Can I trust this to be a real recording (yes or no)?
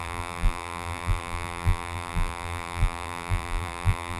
no